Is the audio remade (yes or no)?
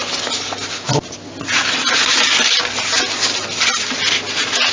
no